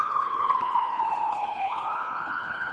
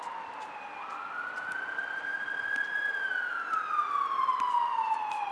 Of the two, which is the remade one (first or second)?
first